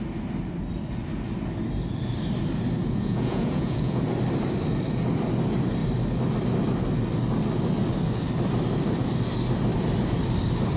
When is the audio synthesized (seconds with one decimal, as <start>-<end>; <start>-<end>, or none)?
2.8-4.0